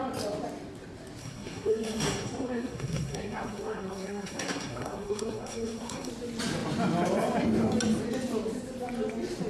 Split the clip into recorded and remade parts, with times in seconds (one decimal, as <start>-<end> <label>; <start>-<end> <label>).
0.0-1.2 recorded; 1.2-6.1 remade; 6.1-9.5 recorded